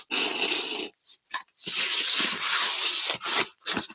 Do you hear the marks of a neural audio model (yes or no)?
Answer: no